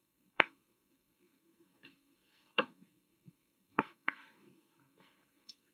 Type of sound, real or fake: fake